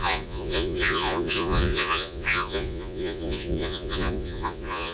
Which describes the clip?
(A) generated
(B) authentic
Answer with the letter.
A